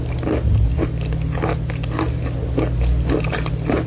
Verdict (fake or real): real